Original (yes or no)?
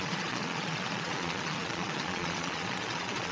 no